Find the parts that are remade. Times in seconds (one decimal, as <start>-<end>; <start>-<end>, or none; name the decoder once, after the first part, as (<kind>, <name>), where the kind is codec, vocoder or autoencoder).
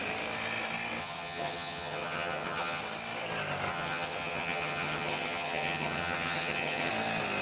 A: 1.0-2.8 (vocoder, HiFi-GAN); 3.7-6.9